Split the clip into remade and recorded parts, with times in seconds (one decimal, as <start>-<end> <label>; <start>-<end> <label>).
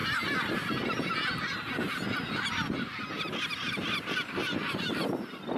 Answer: 0.0-3.2 recorded; 3.2-5.6 remade